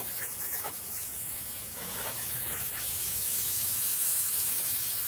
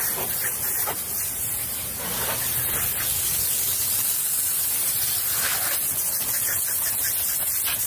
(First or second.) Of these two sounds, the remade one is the first